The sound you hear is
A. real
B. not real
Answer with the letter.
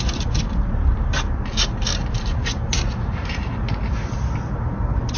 B